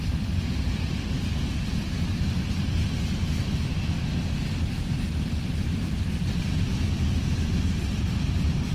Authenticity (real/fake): real